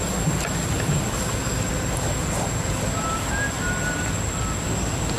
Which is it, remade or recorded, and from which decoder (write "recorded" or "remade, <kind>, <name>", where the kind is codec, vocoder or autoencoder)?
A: recorded